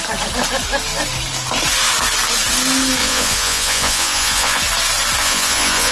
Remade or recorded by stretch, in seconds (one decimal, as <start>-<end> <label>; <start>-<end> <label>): 0.0-3.0 recorded; 3.0-4.6 remade; 4.6-5.2 recorded; 5.2-5.9 remade